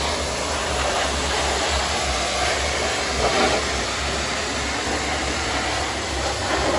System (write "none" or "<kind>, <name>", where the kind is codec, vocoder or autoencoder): none